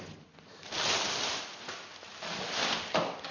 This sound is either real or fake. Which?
real